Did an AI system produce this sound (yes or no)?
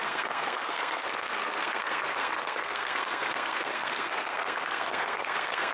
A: yes